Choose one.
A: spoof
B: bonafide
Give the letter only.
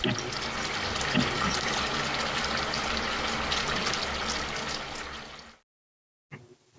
B